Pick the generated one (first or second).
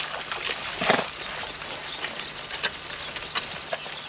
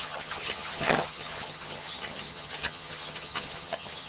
second